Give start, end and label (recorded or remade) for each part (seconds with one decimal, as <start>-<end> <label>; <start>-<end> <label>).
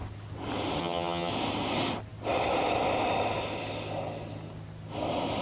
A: 0.0-0.8 recorded; 0.8-1.3 remade; 1.3-5.4 recorded